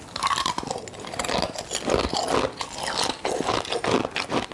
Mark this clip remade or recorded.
recorded